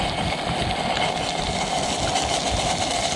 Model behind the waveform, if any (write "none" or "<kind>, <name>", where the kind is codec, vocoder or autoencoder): none